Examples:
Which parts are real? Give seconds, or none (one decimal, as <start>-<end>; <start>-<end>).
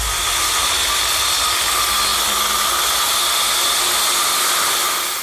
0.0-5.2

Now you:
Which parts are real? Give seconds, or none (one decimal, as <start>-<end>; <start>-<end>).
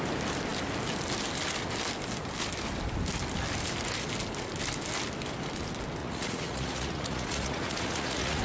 0.0-6.0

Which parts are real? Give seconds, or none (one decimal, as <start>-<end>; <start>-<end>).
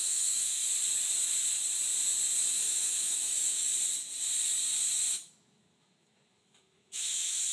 0.6-2.5; 3.7-5.1